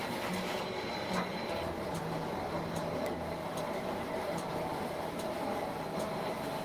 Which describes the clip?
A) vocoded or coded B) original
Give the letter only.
A